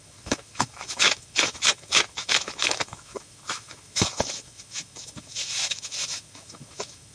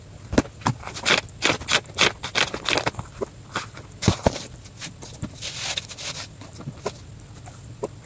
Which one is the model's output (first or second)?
first